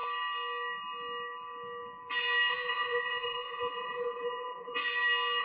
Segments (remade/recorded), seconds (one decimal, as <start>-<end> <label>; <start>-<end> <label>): 0.0-2.5 recorded; 2.5-4.8 remade; 4.8-5.4 recorded